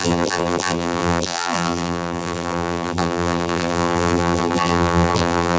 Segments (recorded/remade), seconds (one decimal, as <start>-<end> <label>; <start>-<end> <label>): 0.0-5.6 remade